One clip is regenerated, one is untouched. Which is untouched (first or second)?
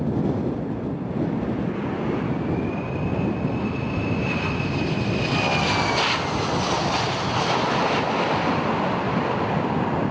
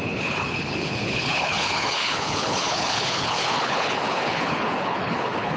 first